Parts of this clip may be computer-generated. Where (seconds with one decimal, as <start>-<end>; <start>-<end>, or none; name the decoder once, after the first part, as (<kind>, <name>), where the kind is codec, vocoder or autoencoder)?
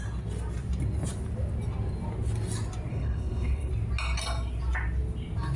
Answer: 2.9-3.7 (codec, HILCodec)